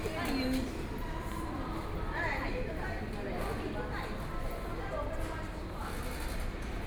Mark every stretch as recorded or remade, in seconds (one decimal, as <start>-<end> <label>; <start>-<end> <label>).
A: 0.0-0.6 recorded; 0.6-3.5 remade; 3.5-6.9 recorded

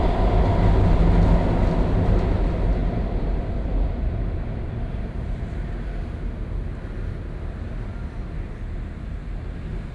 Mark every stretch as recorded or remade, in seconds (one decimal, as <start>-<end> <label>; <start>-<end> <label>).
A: 0.0-2.8 recorded; 2.8-5.7 remade; 5.7-9.9 recorded

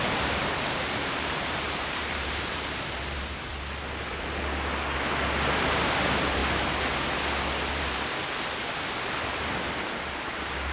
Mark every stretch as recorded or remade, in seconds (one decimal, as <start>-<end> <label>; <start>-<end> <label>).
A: 0.0-3.5 remade; 3.5-5.6 recorded; 5.6-6.4 remade; 6.4-7.7 recorded; 7.7-8.2 remade; 8.2-8.9 recorded; 8.9-10.7 remade

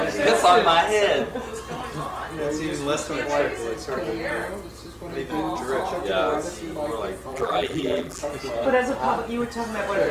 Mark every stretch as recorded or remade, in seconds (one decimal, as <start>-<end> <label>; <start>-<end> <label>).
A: 0.0-7.3 recorded; 7.3-8.2 remade; 8.2-10.1 recorded

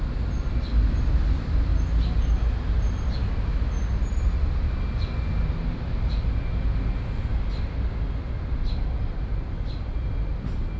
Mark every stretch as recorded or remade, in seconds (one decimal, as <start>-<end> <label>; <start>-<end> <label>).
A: 0.0-10.8 recorded

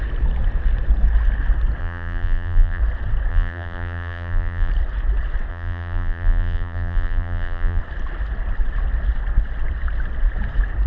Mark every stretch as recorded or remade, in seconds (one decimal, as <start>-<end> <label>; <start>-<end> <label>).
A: 0.0-1.8 recorded; 1.8-2.8 remade; 2.8-3.3 recorded; 3.3-4.7 remade; 4.7-5.5 recorded; 5.5-7.8 remade; 7.8-10.9 recorded

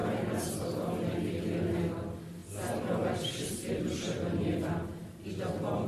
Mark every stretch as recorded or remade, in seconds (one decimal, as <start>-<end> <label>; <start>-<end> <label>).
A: 0.0-2.4 recorded; 2.4-3.8 remade; 3.8-5.9 recorded

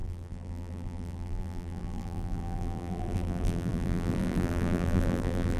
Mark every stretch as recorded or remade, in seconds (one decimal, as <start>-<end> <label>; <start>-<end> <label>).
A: 0.0-5.6 remade